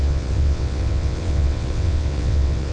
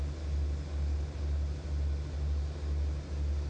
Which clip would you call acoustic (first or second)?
second